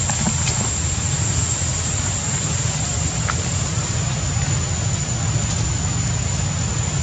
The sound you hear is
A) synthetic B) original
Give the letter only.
B